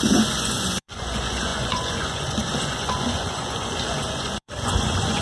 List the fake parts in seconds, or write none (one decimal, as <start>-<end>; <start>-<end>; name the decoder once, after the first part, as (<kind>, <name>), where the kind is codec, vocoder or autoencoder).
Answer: 0.0-5.2 (vocoder, Vocos)